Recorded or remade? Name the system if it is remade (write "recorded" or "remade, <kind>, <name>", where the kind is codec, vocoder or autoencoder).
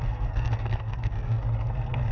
remade, codec, SNAC